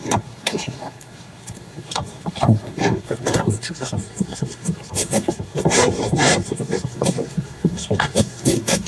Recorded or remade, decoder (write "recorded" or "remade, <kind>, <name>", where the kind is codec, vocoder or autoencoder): remade, codec, SNAC